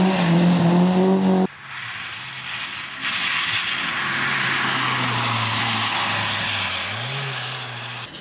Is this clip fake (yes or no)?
no